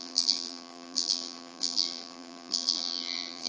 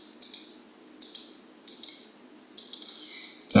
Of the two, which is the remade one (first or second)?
first